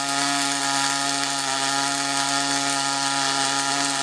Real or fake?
real